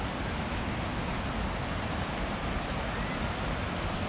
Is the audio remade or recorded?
recorded